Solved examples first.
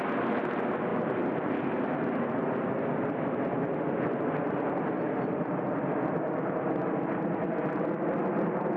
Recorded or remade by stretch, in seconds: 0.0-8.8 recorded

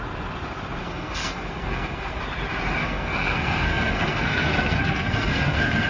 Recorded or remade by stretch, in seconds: 0.0-0.8 recorded; 0.8-2.2 remade; 2.2-2.8 recorded; 2.8-5.9 remade

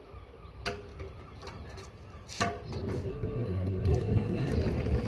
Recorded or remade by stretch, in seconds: 0.0-3.1 recorded; 3.1-4.5 remade; 4.5-5.1 recorded

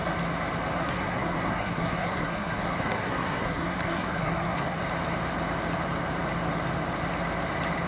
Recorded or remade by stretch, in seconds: 0.0-0.7 recorded; 0.7-4.8 remade; 4.8-7.9 recorded